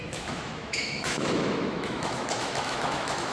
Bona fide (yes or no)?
no